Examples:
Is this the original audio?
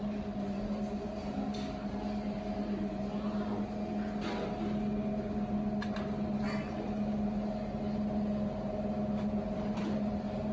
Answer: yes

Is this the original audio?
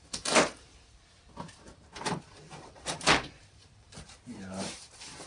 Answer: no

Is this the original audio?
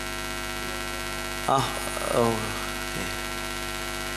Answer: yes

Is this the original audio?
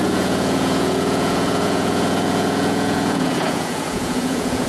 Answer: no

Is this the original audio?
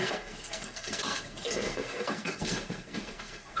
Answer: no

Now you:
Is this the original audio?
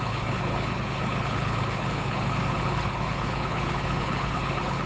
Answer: no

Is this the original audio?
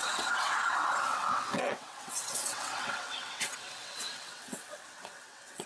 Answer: no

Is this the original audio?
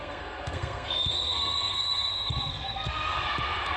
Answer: no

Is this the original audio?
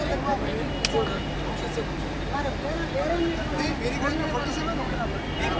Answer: yes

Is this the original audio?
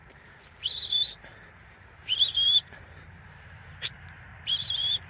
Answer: no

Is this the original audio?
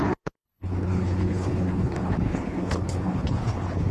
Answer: no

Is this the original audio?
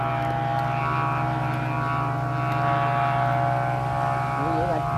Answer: yes